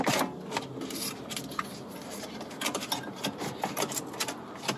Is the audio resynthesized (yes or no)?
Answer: no